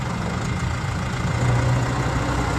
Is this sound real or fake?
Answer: fake